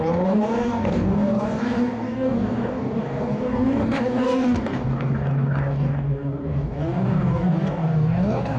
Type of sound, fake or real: fake